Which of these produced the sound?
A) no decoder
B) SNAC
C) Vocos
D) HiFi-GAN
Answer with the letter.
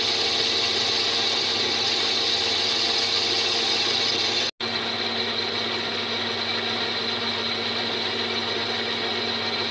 A